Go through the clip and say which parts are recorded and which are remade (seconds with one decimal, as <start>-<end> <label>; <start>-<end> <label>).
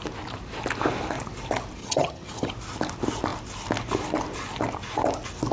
0.0-1.8 recorded; 1.8-2.5 remade; 2.5-5.5 recorded